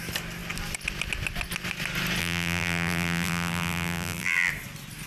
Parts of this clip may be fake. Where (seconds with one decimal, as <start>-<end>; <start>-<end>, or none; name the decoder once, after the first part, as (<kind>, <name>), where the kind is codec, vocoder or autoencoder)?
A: 2.2-4.5 (vocoder, BigVGAN v2)